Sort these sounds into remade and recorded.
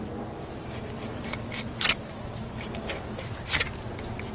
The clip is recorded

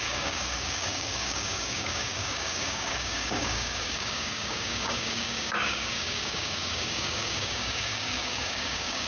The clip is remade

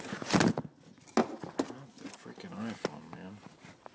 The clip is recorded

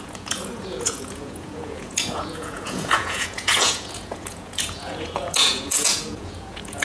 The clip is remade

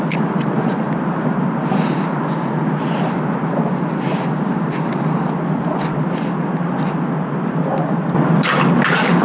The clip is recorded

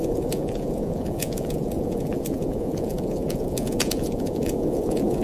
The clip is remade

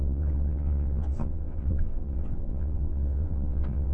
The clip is remade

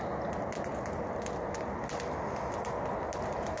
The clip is recorded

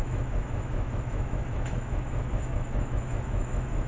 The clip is remade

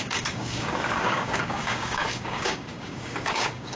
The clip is remade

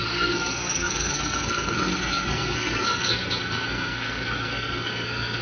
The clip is remade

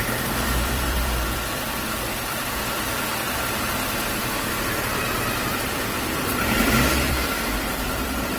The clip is remade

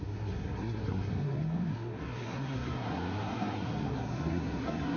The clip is remade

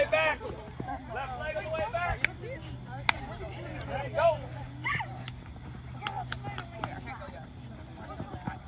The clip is recorded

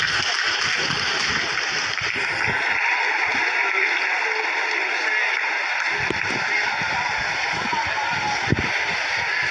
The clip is recorded